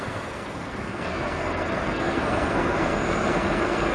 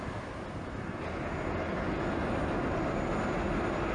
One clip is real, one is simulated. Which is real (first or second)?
second